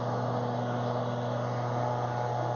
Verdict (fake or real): real